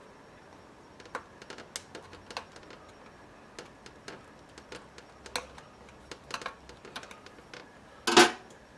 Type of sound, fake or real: real